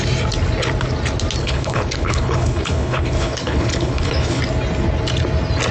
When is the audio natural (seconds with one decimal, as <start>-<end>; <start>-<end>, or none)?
0.0-1.4; 4.4-5.7